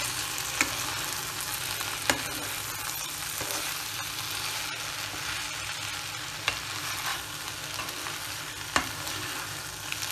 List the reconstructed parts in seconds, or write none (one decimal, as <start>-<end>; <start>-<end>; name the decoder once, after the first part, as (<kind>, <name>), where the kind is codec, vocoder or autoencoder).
none

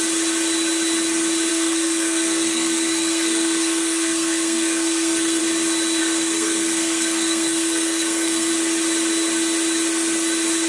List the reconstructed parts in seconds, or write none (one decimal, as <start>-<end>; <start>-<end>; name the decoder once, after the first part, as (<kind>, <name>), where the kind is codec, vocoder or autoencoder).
1.5-5.4 (codec, SNAC); 6.0-8.5

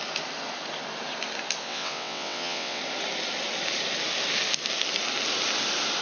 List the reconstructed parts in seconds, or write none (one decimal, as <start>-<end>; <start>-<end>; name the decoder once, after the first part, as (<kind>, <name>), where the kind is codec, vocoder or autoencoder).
1.6-2.8 (vocoder, WaveNeXt)

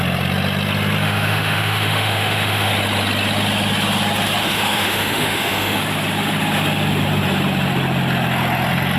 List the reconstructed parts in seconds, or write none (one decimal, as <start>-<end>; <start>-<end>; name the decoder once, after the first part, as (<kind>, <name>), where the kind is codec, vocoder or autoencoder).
1.0-2.7 (autoencoder, DAC-VAE); 4.4-5.8

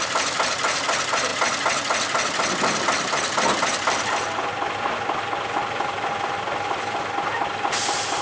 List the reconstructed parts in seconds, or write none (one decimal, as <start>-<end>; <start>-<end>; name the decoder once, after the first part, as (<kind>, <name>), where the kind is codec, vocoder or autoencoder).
none

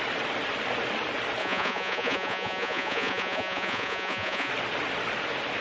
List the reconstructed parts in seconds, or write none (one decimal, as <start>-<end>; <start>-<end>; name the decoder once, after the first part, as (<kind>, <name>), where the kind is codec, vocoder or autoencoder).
1.4-4.5 (vocoder, Vocos)

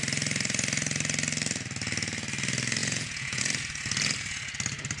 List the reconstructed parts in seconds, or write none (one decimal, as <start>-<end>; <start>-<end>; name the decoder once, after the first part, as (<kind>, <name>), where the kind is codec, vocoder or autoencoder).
2.8-3.4 (vocoder, Vocos)